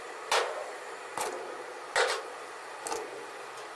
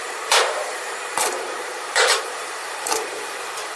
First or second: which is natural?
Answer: first